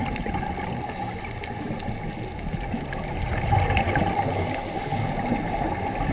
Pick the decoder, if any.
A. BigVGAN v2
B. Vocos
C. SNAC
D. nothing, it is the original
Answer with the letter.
D